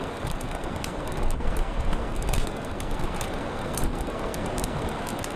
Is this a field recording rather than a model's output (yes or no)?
no